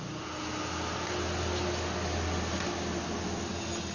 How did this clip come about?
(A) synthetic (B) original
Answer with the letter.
B